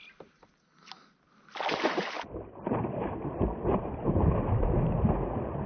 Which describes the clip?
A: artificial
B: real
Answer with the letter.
B